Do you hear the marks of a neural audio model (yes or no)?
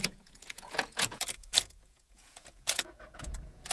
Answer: yes